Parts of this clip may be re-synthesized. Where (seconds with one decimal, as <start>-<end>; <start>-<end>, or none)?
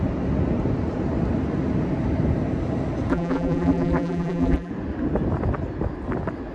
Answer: 3.1-4.7